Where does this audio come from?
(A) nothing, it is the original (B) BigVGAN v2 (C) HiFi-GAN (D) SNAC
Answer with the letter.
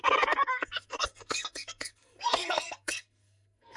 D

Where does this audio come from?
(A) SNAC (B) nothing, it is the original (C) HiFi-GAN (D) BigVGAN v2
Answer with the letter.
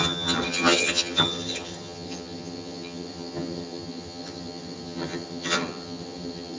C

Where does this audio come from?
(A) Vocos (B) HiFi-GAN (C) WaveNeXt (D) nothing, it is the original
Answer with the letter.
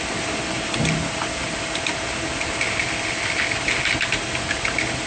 D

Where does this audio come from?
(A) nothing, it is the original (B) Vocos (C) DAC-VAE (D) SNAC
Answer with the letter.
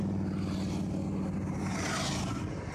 A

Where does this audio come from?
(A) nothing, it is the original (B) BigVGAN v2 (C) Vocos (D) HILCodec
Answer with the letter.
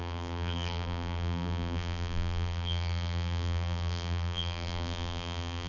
B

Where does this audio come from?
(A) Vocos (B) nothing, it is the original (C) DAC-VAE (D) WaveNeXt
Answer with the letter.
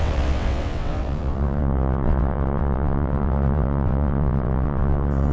D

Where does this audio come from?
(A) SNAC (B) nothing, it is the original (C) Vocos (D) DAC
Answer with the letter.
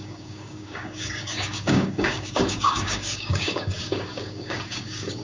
D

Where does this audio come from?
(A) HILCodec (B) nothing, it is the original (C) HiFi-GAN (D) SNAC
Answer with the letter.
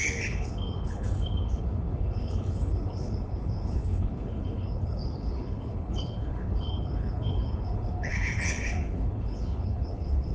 A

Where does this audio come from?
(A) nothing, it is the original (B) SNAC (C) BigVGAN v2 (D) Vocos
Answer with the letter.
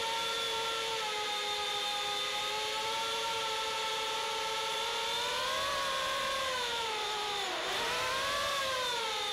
C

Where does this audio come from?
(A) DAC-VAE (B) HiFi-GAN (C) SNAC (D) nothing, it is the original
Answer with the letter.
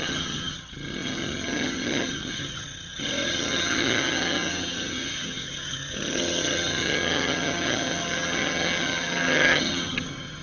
B